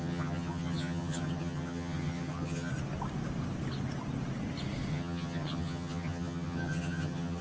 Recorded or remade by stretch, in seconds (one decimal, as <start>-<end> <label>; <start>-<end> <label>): 0.0-2.7 remade; 2.7-4.9 recorded; 4.9-7.4 remade